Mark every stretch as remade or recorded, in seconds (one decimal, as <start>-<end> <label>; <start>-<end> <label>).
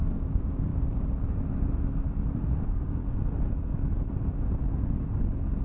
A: 0.0-0.7 remade; 0.7-2.6 recorded; 2.6-3.0 remade; 3.0-5.6 recorded